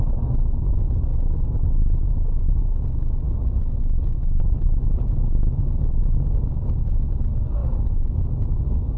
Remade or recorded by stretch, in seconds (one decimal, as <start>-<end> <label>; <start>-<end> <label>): 0.0-7.6 recorded; 7.6-8.3 remade; 8.3-9.0 recorded